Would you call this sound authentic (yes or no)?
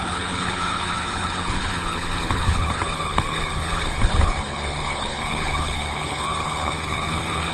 no